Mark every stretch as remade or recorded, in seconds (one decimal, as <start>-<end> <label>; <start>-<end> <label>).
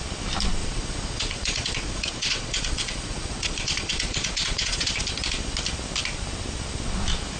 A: 0.0-0.6 recorded; 0.6-5.0 remade; 5.0-7.4 recorded